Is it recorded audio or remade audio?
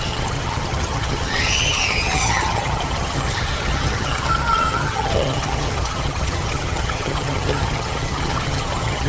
remade